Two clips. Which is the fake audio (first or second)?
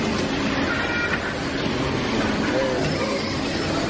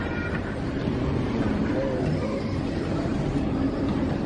second